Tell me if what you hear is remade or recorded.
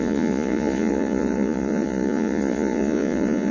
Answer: remade